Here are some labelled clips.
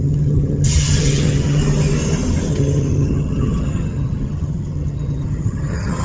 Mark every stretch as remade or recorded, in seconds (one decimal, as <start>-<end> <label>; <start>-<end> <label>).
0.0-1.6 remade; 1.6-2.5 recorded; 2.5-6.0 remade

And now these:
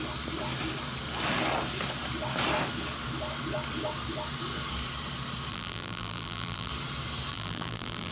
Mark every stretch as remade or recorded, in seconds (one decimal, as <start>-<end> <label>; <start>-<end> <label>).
0.0-5.5 recorded; 5.5-6.7 remade; 6.7-7.3 recorded; 7.3-8.1 remade

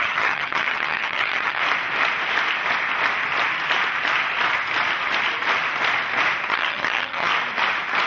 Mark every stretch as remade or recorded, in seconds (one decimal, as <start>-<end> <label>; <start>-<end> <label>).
0.0-1.6 remade; 1.6-6.5 recorded; 6.5-7.3 remade; 7.3-8.1 recorded

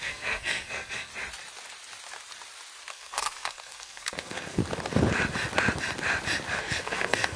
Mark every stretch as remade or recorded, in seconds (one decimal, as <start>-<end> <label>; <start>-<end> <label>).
0.0-1.1 remade; 1.1-2.9 recorded; 2.9-4.6 remade; 4.6-6.6 recorded; 6.6-7.4 remade

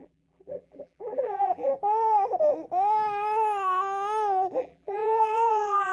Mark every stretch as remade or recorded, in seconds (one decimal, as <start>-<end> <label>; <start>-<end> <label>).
0.0-1.7 remade; 1.7-4.6 recorded; 4.6-5.9 remade

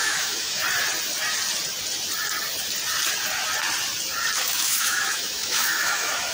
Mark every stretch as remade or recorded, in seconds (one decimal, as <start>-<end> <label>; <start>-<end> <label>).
0.0-0.6 remade; 0.6-4.4 recorded; 4.4-6.3 remade